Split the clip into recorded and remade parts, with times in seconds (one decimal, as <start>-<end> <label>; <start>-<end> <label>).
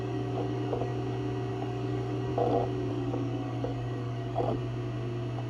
0.0-0.9 remade; 0.9-1.5 recorded; 1.5-2.3 remade; 2.3-2.9 recorded; 2.9-4.6 remade; 4.6-5.5 recorded